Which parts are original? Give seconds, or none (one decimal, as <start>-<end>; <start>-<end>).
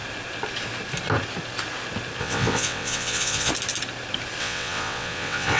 0.0-2.2; 3.5-4.4